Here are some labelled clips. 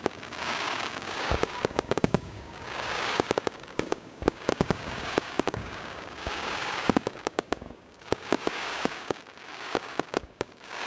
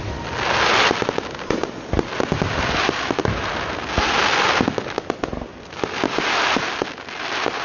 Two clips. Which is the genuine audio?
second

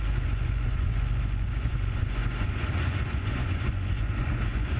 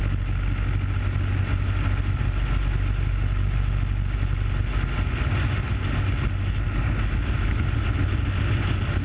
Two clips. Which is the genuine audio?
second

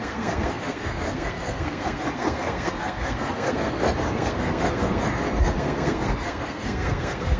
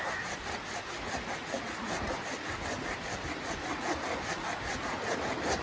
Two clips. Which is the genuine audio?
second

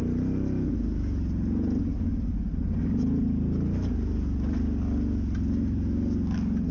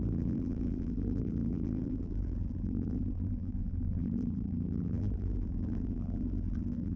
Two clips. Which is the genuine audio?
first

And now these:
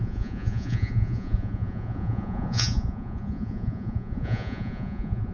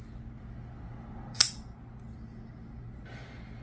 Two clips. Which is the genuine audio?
second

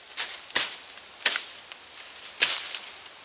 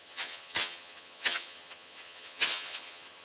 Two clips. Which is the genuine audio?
first